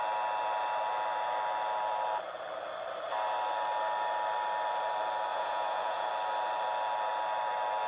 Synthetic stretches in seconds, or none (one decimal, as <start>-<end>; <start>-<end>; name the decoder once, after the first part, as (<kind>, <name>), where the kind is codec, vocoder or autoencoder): 5.3-6.1 (vocoder, Vocos)